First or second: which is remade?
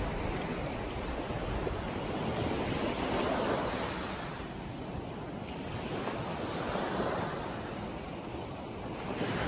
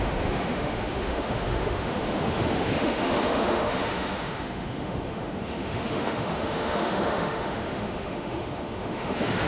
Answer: second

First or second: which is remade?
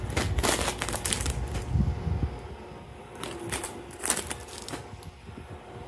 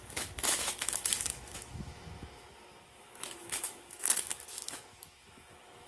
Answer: second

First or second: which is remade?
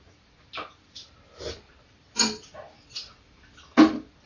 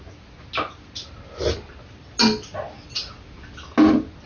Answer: first